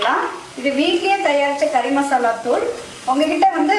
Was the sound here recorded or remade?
remade